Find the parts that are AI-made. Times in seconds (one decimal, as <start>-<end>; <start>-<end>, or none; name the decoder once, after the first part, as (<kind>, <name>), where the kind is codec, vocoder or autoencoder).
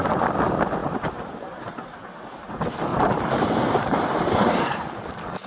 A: 0.8-1.7 (vocoder, BigVGAN v2); 2.9-5.1